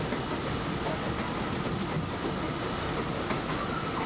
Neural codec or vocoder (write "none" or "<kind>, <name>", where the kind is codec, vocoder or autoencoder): none